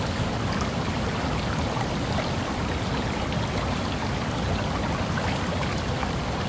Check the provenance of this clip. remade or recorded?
recorded